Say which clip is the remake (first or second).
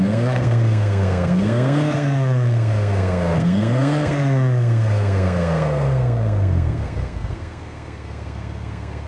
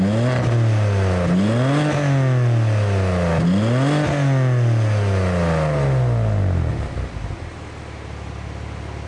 first